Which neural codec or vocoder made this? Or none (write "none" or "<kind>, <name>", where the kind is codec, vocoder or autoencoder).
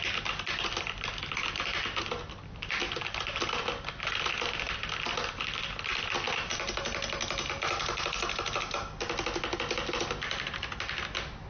none